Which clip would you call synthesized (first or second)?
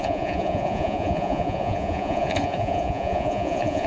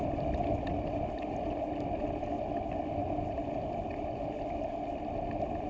first